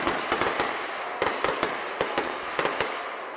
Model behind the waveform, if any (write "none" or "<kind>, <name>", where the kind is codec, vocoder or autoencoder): none